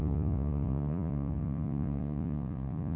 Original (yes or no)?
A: no